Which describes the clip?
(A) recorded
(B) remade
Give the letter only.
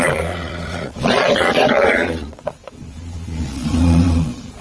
B